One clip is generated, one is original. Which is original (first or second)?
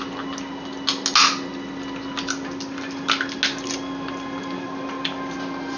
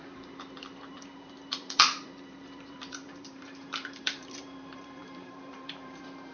first